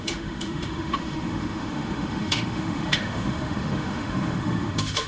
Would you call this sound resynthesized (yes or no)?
yes